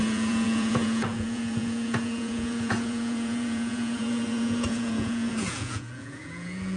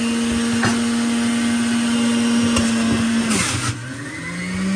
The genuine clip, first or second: second